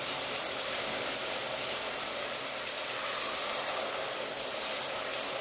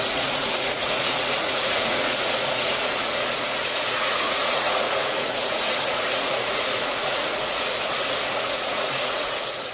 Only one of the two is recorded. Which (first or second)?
first